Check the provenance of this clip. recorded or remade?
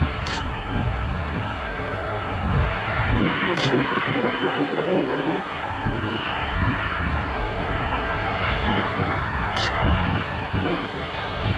remade